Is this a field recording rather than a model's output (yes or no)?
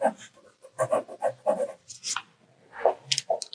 yes